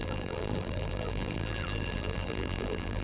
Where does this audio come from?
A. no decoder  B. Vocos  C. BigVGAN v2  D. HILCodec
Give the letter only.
C